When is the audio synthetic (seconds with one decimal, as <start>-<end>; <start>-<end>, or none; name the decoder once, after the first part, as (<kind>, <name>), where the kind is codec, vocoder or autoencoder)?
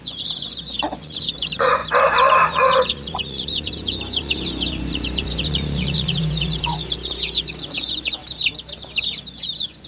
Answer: 0.0-1.8 (vocoder, Vocos); 2.5-8.2; 9.0-9.9